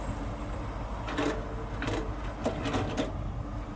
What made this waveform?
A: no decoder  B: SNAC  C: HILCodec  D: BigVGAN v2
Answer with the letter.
A